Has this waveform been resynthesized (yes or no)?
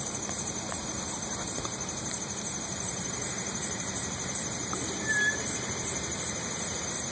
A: yes